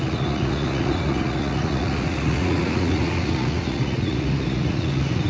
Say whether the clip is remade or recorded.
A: remade